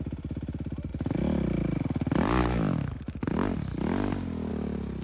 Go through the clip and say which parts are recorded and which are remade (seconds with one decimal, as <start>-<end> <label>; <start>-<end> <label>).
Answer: 0.0-5.0 recorded